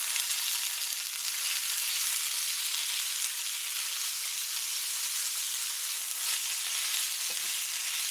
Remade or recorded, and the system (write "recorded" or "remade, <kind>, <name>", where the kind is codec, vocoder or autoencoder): recorded